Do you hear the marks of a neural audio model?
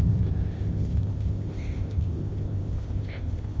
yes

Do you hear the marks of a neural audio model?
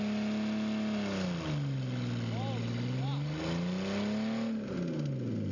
no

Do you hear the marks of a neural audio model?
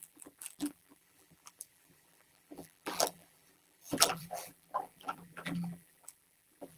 yes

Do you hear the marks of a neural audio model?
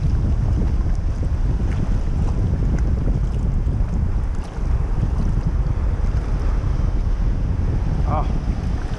no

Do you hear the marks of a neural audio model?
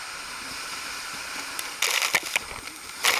no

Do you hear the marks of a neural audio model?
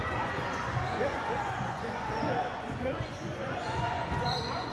yes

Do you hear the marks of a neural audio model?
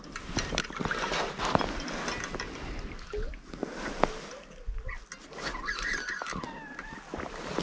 no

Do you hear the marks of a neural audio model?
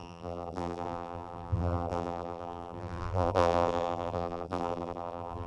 yes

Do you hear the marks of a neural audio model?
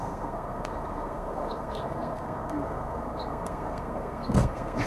yes